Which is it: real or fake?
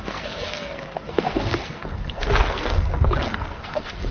fake